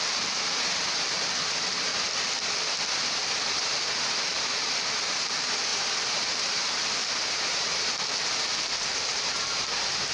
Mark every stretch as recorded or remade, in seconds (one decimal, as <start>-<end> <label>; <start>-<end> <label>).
0.0-1.9 remade; 1.9-3.1 recorded; 3.1-10.1 remade